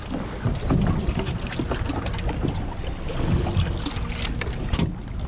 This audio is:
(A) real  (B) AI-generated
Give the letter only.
A